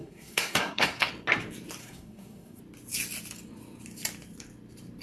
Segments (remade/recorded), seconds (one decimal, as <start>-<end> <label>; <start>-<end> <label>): 0.0-1.1 remade; 1.1-1.8 recorded; 1.8-2.6 remade; 2.6-5.0 recorded